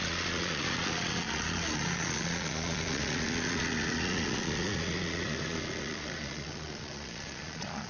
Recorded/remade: remade